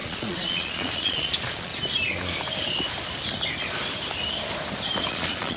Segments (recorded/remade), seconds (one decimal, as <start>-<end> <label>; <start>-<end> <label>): 0.0-1.7 remade; 1.7-5.1 recorded; 5.1-5.6 remade